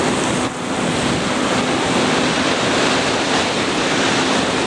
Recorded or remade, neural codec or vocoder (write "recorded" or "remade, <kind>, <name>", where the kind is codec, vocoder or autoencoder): recorded